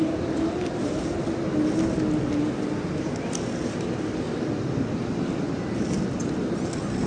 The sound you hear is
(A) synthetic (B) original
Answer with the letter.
B